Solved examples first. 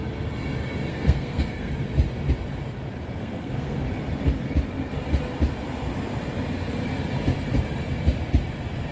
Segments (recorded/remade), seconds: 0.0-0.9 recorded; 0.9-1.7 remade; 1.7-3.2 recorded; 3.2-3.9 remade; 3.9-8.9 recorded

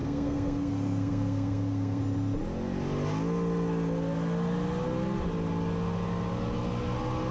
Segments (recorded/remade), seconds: 0.0-2.0 remade; 2.0-7.3 recorded

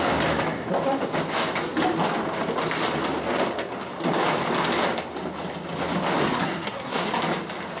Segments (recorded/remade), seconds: 0.0-6.3 recorded; 6.3-7.1 remade; 7.1-7.8 recorded

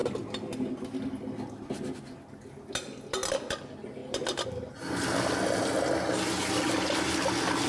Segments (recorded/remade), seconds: 0.0-7.7 recorded

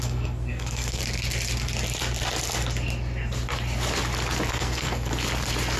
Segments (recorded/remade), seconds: 0.0-1.0 remade; 1.0-4.5 recorded; 4.5-5.1 remade; 5.1-5.8 recorded

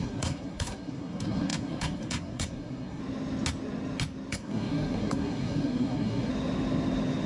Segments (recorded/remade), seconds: 0.0-3.0 remade; 3.0-4.3 recorded; 4.3-6.3 remade; 6.3-7.3 recorded

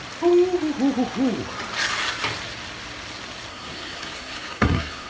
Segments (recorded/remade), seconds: 0.0-3.5 recorded; 3.5-5.1 remade

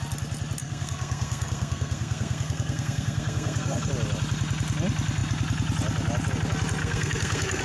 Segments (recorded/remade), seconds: 0.0-0.6 recorded; 0.6-3.9 remade; 3.9-6.8 recorded; 6.8-7.6 remade